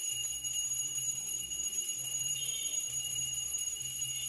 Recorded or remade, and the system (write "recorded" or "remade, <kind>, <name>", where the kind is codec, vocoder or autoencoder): remade, vocoder, BigVGAN v2